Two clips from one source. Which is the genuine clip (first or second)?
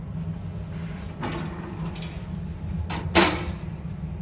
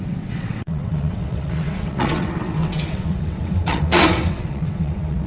first